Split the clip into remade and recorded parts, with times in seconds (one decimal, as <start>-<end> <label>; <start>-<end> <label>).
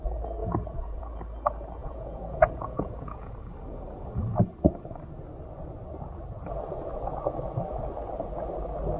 0.0-0.4 recorded; 0.4-1.0 remade; 1.0-1.8 recorded; 1.8-3.3 remade; 3.3-9.0 recorded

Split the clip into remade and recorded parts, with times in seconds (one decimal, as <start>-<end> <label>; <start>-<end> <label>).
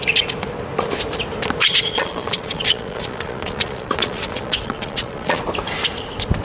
0.0-1.6 recorded; 1.6-5.4 remade; 5.4-6.4 recorded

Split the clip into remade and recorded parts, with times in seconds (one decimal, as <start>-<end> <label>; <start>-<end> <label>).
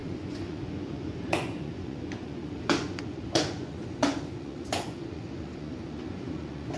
0.0-6.8 remade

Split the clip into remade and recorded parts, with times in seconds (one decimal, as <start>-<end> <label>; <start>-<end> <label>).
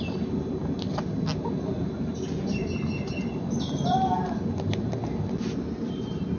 0.0-6.4 recorded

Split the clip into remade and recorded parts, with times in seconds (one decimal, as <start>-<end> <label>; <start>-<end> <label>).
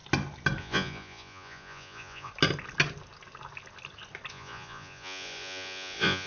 0.0-0.6 recorded; 0.6-2.3 remade; 2.3-4.3 recorded; 4.3-6.3 remade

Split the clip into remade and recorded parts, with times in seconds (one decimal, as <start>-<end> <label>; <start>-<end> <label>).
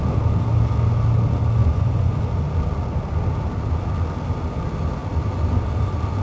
0.0-1.6 recorded; 1.6-2.2 remade; 2.2-6.2 recorded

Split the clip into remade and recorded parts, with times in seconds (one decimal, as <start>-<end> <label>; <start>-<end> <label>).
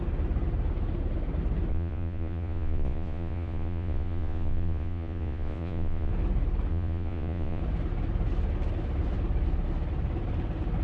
0.0-1.7 recorded; 1.7-6.1 remade; 6.1-6.7 recorded; 6.7-7.6 remade; 7.6-10.8 recorded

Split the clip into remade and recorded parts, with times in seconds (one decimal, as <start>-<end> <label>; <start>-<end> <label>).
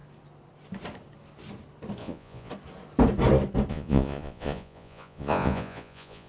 0.0-2.0 recorded; 2.0-2.5 remade; 2.5-3.7 recorded; 3.7-6.3 remade